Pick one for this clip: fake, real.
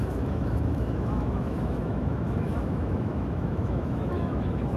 fake